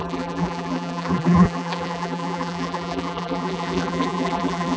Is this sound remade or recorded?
remade